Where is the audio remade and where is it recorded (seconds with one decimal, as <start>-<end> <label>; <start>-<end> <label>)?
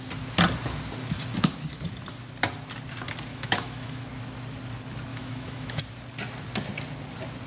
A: 0.0-3.3 recorded; 3.3-4.0 remade; 4.0-5.1 recorded; 5.1-5.8 remade; 5.8-7.5 recorded